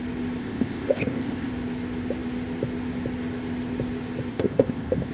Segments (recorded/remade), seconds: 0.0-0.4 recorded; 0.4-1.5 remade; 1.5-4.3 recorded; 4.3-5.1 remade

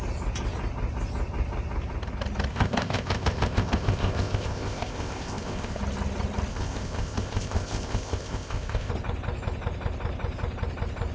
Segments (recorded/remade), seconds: 0.0-2.5 recorded; 2.5-5.8 remade; 5.8-6.5 recorded; 6.5-8.9 remade; 8.9-11.1 recorded